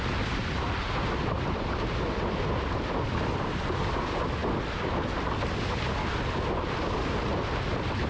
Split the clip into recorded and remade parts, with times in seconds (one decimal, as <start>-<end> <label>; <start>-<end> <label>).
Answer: 0.0-8.1 recorded